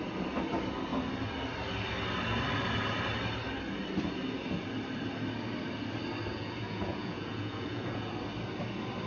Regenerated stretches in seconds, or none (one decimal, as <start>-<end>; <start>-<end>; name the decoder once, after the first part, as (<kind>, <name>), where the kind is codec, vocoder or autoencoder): 6.3-8.1 (vocoder, Vocos)